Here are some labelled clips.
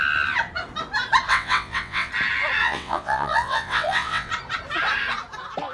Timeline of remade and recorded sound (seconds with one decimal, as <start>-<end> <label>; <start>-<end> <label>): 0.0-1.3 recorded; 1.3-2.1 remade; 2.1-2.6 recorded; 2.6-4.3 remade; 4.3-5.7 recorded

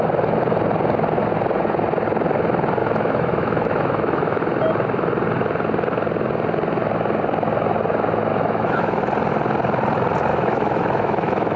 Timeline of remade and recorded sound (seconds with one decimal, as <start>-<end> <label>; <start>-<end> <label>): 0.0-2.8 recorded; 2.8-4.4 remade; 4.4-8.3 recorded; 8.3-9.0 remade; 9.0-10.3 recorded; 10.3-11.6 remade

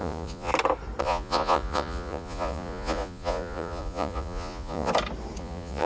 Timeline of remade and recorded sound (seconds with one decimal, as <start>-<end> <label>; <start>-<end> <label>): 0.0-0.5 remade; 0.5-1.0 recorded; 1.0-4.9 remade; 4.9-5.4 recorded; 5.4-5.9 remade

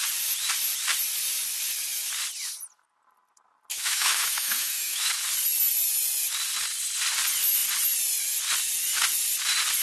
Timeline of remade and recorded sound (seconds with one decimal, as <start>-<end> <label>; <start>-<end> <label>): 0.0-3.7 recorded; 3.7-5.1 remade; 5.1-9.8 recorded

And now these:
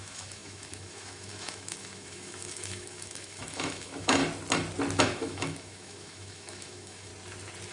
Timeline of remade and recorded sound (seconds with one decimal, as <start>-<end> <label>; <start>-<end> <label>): 0.0-4.2 remade; 4.2-5.0 recorded; 5.0-7.1 remade; 7.1-7.7 recorded